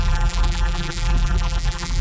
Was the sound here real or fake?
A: fake